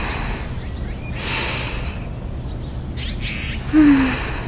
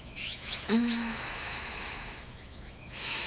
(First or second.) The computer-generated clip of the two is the second